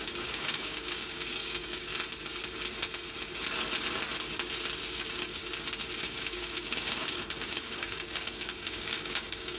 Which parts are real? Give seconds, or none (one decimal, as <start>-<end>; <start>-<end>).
1.9-4.9; 5.4-6.0